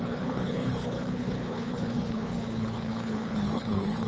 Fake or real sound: fake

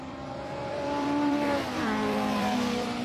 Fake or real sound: fake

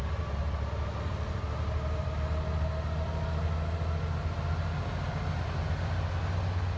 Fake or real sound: real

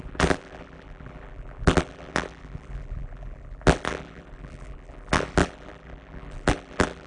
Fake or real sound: fake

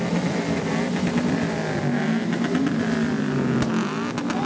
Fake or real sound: real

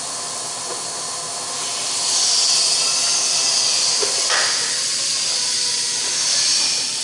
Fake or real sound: real